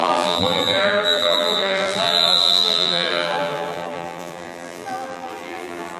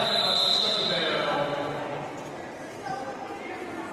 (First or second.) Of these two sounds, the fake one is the first